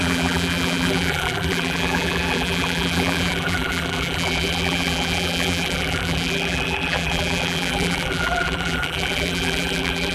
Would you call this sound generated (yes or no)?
yes